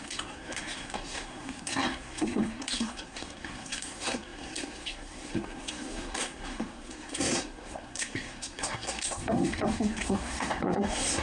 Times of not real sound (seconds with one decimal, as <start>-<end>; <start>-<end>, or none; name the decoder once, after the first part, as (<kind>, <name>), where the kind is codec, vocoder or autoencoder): 0.0-11.2 (codec, SNAC)